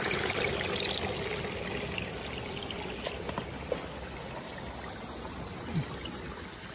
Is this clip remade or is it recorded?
recorded